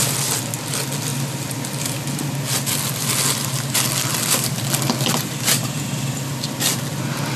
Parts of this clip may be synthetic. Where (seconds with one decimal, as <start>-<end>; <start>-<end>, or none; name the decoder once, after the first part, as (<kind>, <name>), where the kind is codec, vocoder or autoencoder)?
4.1-6.4 (vocoder, BigVGAN v2)